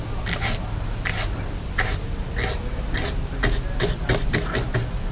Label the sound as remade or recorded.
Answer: recorded